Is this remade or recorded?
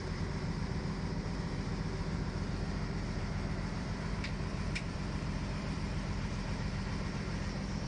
remade